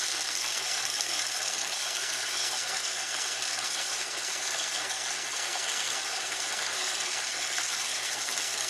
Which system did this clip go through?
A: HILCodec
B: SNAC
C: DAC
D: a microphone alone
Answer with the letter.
B